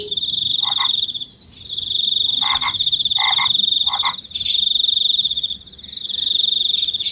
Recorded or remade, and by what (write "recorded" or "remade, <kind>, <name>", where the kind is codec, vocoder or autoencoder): recorded